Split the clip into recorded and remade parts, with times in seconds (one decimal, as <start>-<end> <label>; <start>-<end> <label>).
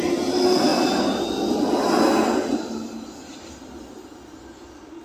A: 0.0-5.0 recorded